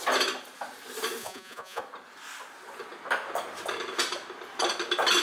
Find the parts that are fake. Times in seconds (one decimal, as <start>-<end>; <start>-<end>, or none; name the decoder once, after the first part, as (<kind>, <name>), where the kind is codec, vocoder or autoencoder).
1.2-1.8 (vocoder, Vocos)